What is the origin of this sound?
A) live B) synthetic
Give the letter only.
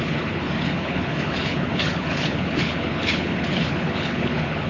B